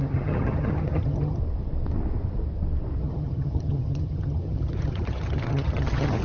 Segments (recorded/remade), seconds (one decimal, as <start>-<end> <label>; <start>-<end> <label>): 0.0-1.4 remade; 1.4-3.0 recorded; 3.0-6.2 remade